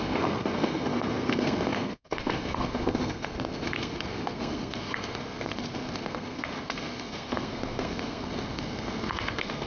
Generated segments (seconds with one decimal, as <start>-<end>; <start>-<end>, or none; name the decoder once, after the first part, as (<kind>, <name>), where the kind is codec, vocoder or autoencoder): 0.0-9.7 (codec, SNAC)